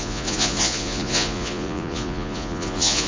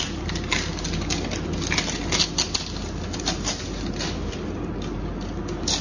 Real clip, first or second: second